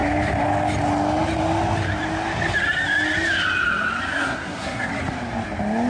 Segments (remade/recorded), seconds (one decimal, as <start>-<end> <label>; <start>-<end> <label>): 0.0-4.1 recorded; 4.1-4.9 remade; 4.9-5.9 recorded